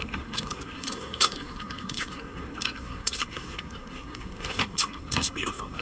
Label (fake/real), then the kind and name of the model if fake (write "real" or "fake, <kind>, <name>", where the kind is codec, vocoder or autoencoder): fake, codec, SNAC